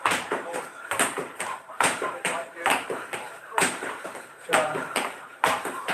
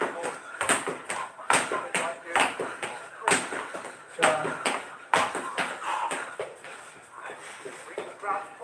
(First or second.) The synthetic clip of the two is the first